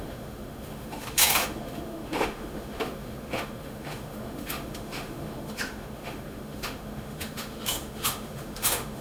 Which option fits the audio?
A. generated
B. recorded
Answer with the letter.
A